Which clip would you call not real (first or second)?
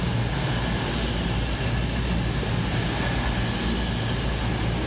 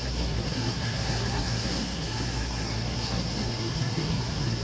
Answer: second